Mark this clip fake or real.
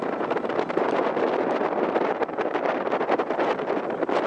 real